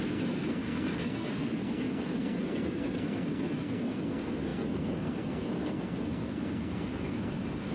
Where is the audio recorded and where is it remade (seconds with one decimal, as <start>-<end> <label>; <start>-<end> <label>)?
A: 0.0-7.7 remade